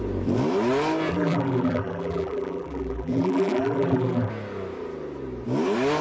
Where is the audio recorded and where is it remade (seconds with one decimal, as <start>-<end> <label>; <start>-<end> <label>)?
0.0-1.1 recorded; 1.1-4.3 remade; 4.3-6.0 recorded